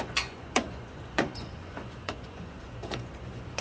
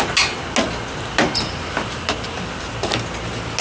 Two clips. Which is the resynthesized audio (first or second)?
first